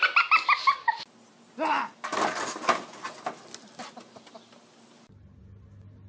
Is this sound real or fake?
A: real